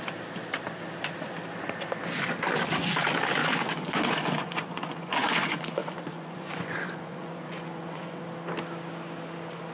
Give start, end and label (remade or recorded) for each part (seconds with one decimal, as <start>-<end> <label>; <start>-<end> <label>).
0.0-3.4 recorded; 3.4-8.2 remade; 8.2-9.7 recorded